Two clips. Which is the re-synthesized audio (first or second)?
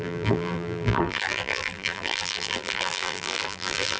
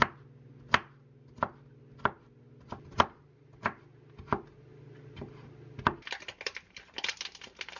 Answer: first